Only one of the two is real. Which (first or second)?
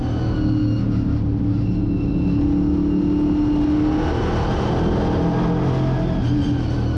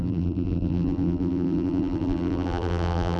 first